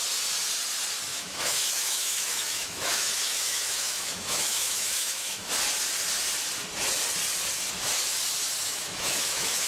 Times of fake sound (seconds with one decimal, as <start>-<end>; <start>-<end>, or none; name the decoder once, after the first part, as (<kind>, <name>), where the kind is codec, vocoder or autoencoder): 1.1-5.5 (autoencoder, DAC-VAE); 8.6-9.7